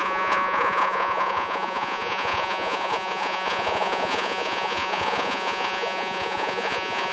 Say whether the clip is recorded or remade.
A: remade